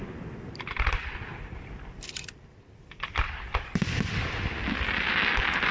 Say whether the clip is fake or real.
real